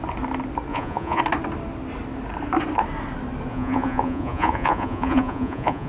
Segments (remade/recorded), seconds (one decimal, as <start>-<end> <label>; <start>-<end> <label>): 0.0-0.7 recorded; 0.7-1.2 remade; 1.2-3.5 recorded; 3.5-5.9 remade